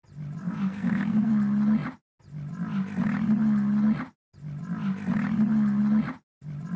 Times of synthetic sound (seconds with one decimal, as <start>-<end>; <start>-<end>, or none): 0.4-1.3